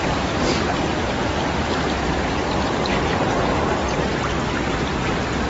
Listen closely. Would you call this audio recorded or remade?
recorded